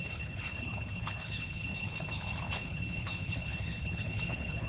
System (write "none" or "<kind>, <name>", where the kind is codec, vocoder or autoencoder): codec, HILCodec